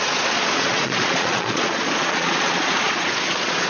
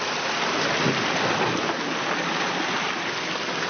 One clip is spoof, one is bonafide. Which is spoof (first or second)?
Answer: first